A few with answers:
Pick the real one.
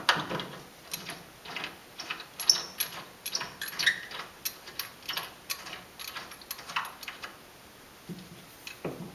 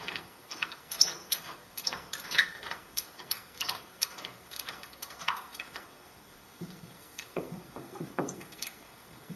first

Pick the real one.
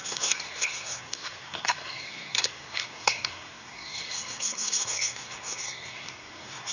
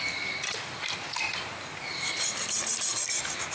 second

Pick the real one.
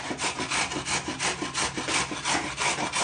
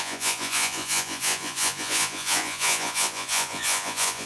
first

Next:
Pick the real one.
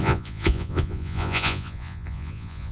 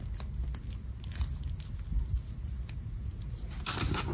second